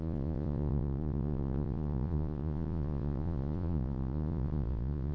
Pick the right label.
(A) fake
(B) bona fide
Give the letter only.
A